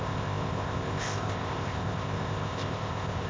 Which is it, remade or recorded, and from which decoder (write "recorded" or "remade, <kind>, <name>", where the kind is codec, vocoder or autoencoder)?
remade, codec, ZipCodec